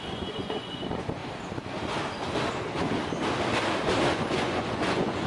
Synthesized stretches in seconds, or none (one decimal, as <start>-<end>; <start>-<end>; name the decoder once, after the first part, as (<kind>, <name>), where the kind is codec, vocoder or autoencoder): 0.0-1.2 (vocoder, Vocos); 4.1-5.3